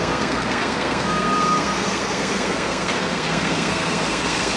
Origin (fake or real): fake